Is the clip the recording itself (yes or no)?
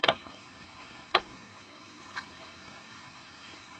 no